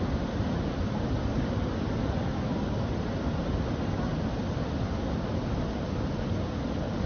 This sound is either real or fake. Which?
real